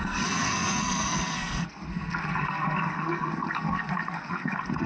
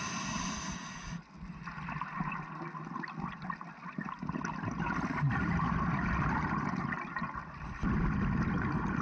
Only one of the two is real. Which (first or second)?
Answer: second